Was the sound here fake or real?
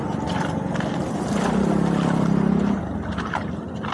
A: real